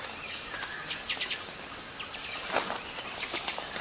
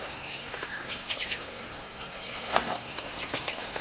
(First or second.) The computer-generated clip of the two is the second